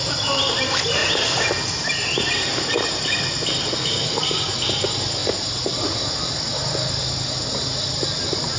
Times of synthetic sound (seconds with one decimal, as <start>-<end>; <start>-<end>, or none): none